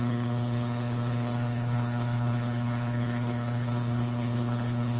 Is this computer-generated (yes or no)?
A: yes